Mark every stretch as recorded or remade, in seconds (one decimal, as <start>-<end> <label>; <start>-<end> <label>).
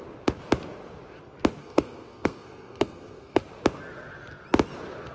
0.0-1.6 recorded; 1.6-3.4 remade; 3.4-5.1 recorded